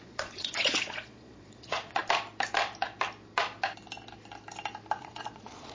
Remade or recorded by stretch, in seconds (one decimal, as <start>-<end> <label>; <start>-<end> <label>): 0.0-2.0 remade; 2.0-5.0 recorded; 5.0-5.7 remade